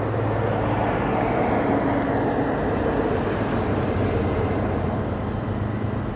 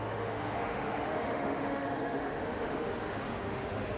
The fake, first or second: second